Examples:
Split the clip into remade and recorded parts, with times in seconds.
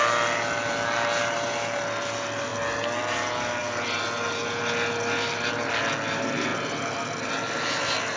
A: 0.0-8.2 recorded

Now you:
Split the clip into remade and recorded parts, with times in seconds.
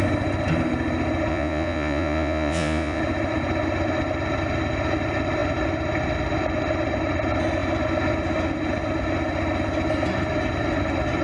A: 0.0-1.3 recorded; 1.3-3.0 remade; 3.0-11.2 recorded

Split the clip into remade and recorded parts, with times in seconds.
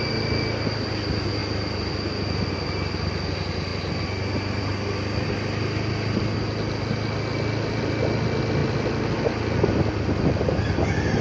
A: 0.0-11.2 recorded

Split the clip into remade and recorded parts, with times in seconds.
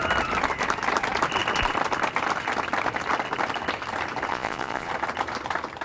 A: 0.0-4.3 recorded; 4.3-4.9 remade; 4.9-5.8 recorded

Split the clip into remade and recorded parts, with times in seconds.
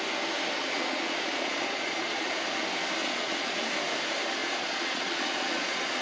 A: 0.0-0.6 recorded; 0.6-2.3 remade; 2.3-3.0 recorded; 3.0-3.6 remade; 3.6-4.4 recorded; 4.4-6.0 remade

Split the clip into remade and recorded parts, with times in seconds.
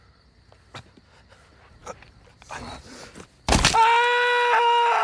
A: 0.0-5.0 recorded